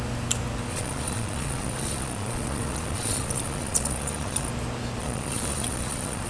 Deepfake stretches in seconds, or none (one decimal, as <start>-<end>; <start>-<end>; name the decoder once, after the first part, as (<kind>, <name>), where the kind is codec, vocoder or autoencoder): 0.7-4.5 (vocoder, Vocos); 5.0-6.3